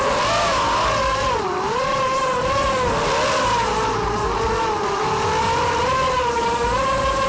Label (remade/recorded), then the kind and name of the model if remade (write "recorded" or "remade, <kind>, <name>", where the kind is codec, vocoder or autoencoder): recorded